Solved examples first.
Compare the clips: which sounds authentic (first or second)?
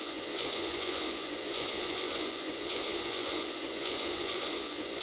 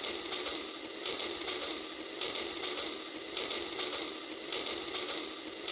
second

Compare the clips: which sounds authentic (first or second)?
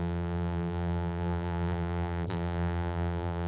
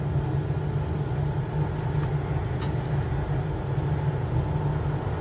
second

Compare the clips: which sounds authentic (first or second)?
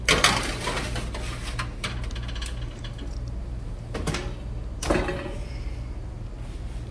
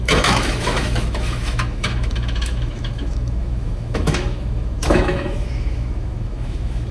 first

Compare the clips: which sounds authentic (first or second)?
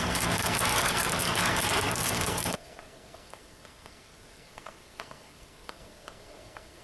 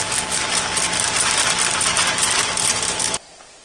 second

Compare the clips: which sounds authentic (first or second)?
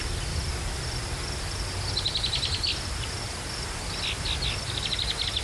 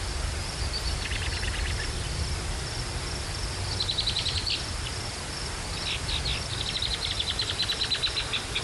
first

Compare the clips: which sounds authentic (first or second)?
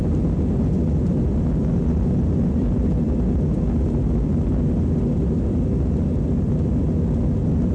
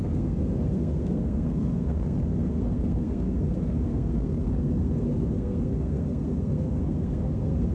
first